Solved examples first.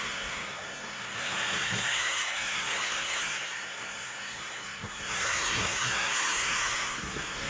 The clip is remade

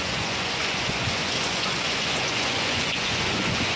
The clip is remade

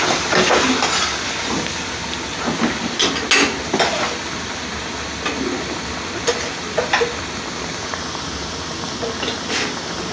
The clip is recorded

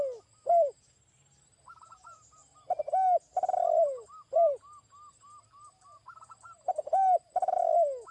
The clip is recorded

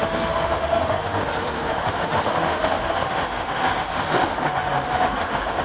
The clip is remade